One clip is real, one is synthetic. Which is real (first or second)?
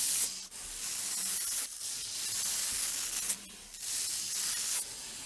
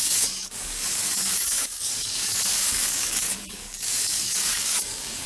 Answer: first